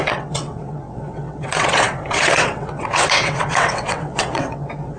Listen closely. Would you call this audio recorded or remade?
remade